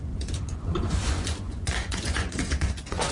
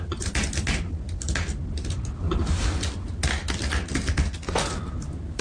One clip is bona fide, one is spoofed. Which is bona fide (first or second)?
second